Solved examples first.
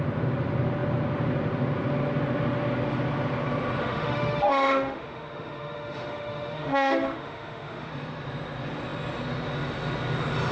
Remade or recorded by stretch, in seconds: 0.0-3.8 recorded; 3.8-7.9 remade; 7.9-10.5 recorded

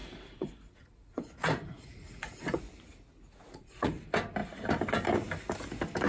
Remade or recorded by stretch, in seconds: 0.0-2.6 remade; 2.6-3.4 recorded; 3.4-4.0 remade; 4.0-6.1 recorded

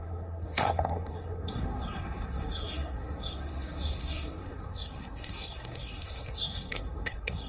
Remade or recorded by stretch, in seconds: 0.0-7.5 remade

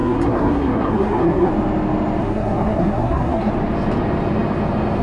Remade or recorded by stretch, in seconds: 0.0-1.5 remade; 1.5-2.2 recorded; 2.2-3.5 remade; 3.5-5.0 recorded

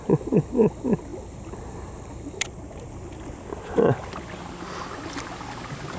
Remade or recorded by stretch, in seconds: 0.0-6.0 recorded

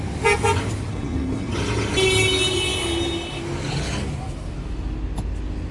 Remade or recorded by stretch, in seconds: 0.0-0.9 recorded; 0.9-1.5 remade; 1.5-5.7 recorded